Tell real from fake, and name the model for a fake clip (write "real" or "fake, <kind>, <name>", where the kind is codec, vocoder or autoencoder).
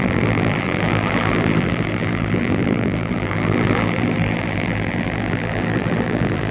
fake, vocoder, BigVGAN v2